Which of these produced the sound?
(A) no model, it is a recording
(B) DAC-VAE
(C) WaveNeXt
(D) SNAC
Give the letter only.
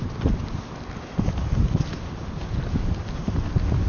A